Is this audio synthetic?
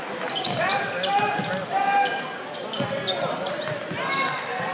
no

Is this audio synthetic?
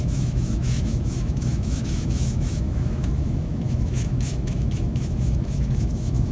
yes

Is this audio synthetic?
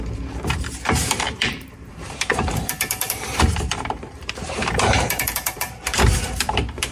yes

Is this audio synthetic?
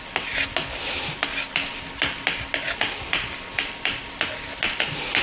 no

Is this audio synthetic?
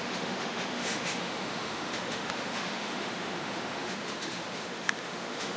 yes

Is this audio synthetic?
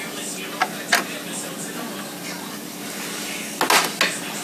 no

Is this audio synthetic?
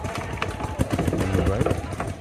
no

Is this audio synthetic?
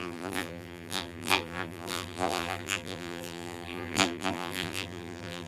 yes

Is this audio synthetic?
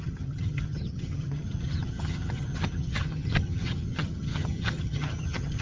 yes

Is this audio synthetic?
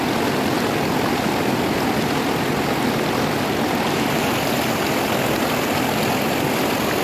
no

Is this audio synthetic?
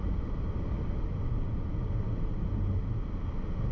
no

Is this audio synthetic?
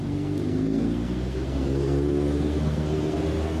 yes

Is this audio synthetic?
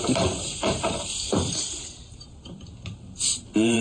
yes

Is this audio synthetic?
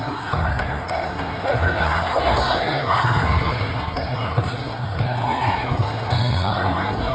yes